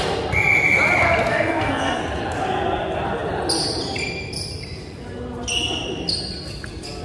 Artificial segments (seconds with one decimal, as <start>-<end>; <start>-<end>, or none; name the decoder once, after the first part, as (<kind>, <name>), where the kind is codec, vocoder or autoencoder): 1.3-2.0 (codec, SNAC)